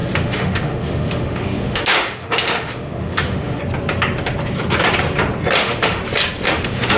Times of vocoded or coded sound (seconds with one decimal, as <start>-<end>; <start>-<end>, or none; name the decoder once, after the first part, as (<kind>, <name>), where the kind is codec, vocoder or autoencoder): 0.0-3.6 (autoencoder, DAC-VAE); 5.6-6.0; 6.5-7.0